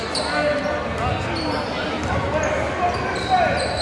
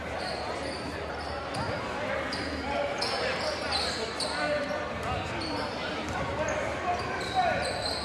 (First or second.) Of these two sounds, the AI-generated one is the second